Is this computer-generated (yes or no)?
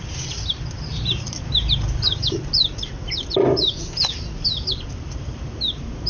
no